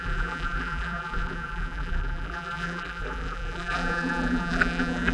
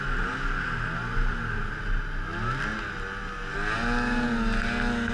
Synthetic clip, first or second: first